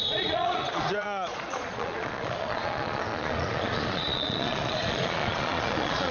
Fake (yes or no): yes